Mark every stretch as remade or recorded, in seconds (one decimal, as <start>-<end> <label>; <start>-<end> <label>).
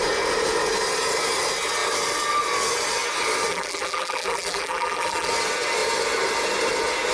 0.0-3.5 recorded; 3.5-5.3 remade; 5.3-7.1 recorded